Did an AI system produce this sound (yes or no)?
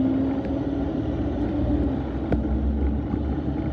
no